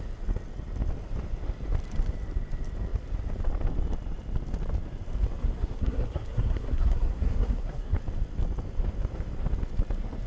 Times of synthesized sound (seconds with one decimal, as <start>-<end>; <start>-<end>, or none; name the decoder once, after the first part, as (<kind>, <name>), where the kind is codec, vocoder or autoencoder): 5.4-8.0 (codec, SNAC)